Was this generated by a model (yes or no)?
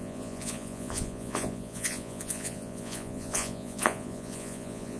yes